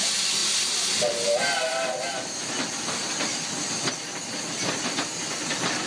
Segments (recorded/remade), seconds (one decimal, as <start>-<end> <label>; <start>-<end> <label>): 0.0-5.9 recorded